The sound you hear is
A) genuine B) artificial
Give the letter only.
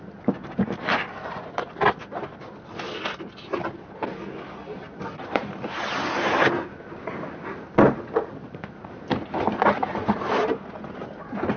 A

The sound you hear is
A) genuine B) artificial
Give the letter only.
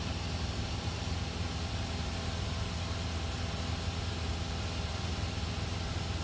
A